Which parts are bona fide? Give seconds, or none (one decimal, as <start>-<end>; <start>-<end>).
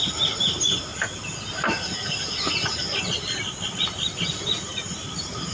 0.0-5.5